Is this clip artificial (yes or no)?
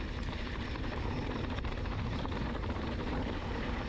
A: yes